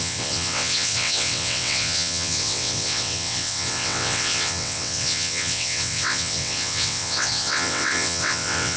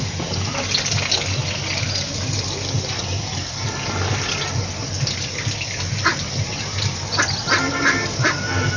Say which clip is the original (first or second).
second